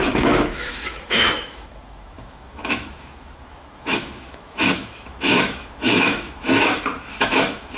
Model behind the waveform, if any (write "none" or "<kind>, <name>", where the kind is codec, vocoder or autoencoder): autoencoder, DAC-VAE